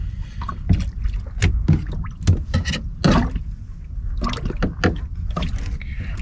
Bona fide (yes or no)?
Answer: yes